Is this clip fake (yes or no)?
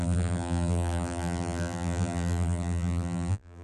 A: yes